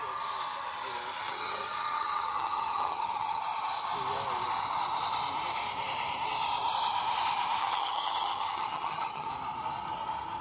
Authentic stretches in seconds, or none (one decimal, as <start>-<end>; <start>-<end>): 0.0-1.2; 3.4-7.6; 9.3-10.4